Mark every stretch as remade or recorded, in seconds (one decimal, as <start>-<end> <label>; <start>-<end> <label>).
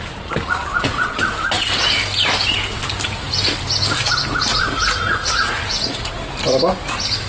0.0-0.7 recorded; 0.7-1.2 remade; 1.2-4.5 recorded; 4.5-6.2 remade; 6.2-7.3 recorded